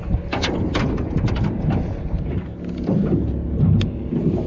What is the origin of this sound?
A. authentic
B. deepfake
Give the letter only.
A